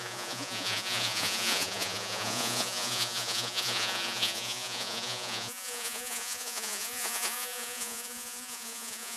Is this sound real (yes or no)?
no